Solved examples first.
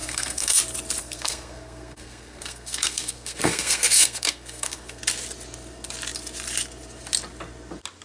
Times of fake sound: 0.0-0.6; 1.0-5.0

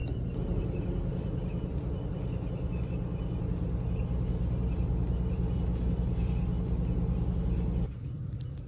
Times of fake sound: none

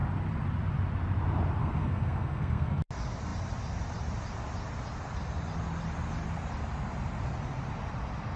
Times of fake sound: 1.6-2.8

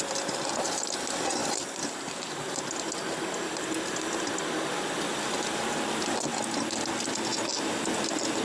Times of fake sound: none

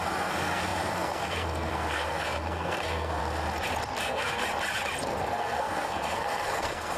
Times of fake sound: 0.0-3.2; 4.0-4.4; 5.0-7.0

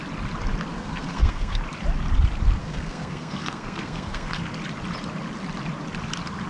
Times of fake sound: 0.7-1.6; 2.6-4.4

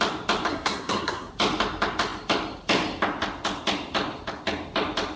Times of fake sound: 0.5-1.3